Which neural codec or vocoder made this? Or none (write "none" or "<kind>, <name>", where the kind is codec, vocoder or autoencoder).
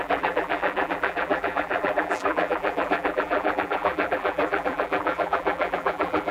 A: vocoder, BigVGAN v2